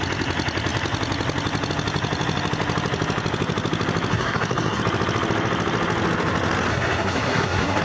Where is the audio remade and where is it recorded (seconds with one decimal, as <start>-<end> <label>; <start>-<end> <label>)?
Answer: 0.0-4.1 recorded; 4.1-4.8 remade; 4.8-6.7 recorded; 6.7-7.8 remade